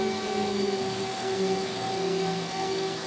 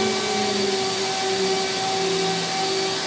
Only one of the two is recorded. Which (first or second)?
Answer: second